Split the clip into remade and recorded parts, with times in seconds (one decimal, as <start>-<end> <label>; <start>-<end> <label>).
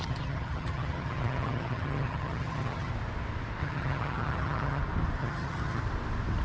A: 0.0-2.9 remade; 2.9-3.6 recorded; 3.6-4.8 remade; 4.8-5.2 recorded; 5.2-5.8 remade; 5.8-6.4 recorded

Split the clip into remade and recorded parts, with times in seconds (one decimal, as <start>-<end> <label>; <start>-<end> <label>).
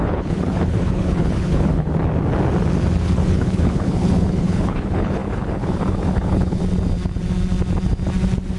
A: 0.0-1.9 remade; 1.9-3.0 recorded; 3.0-6.6 remade; 6.6-8.6 recorded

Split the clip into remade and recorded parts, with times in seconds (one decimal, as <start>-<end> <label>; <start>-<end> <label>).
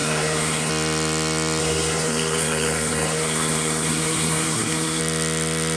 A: 0.0-0.7 remade; 0.7-1.6 recorded; 1.6-5.0 remade; 5.0-5.8 recorded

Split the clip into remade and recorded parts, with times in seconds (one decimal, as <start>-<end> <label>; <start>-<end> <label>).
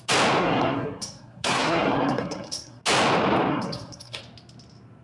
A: 0.0-0.4 recorded; 0.4-2.8 remade; 2.8-3.5 recorded; 3.5-4.2 remade; 4.2-5.0 recorded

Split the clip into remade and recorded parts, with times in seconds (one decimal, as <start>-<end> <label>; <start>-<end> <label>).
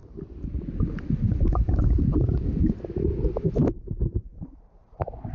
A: 0.0-4.3 recorded; 4.3-5.3 remade